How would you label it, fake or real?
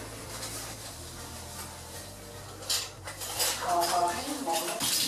real